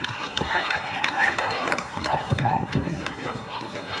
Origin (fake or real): fake